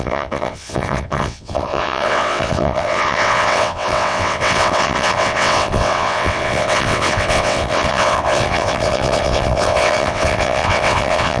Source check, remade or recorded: remade